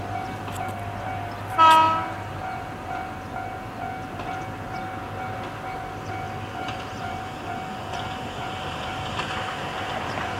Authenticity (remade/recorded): recorded